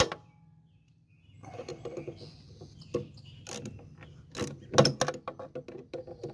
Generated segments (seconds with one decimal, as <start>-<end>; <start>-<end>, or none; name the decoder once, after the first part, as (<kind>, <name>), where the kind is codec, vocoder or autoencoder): none